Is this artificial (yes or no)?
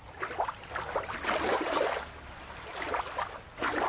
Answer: no